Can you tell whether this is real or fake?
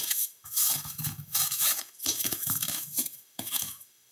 fake